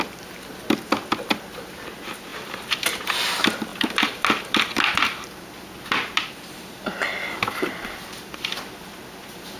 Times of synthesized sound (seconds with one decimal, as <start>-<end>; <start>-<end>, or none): 2.3-3.0; 3.7-8.6